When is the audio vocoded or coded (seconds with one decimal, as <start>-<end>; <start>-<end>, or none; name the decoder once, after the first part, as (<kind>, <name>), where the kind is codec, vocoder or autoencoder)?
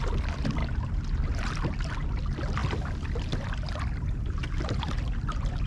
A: none